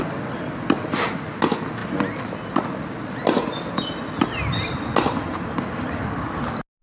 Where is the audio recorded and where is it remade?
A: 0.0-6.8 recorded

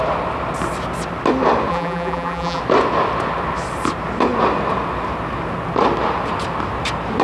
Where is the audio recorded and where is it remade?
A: 0.0-1.7 recorded; 1.7-2.6 remade; 2.6-7.2 recorded

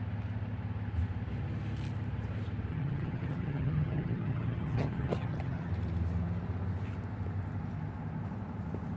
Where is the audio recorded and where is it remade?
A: 0.0-2.7 recorded; 2.7-5.7 remade; 5.7-9.0 recorded

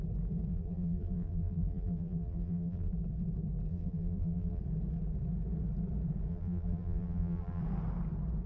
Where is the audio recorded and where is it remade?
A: 0.0-0.5 recorded; 0.5-2.9 remade; 2.9-3.7 recorded; 3.7-4.6 remade; 4.6-6.3 recorded; 6.3-7.6 remade; 7.6-8.5 recorded

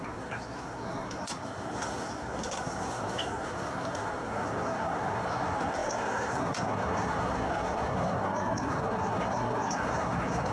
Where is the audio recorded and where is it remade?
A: 0.0-10.5 remade

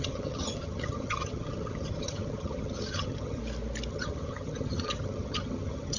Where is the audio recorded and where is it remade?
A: 0.0-3.4 remade; 3.4-3.9 recorded; 3.9-6.0 remade

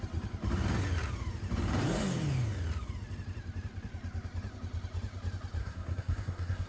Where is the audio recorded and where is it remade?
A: 0.0-5.6 recorded; 5.6-6.7 remade